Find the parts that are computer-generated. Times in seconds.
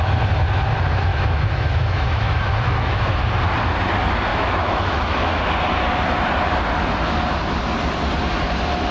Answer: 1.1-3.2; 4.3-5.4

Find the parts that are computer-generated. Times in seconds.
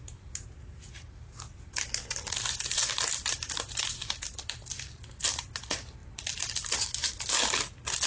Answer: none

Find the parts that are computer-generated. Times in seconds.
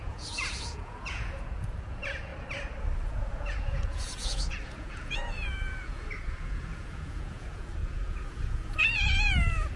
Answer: 0.0-2.3; 3.1-9.8